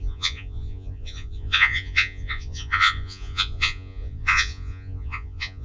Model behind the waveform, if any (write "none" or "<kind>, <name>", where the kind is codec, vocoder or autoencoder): vocoder, Vocos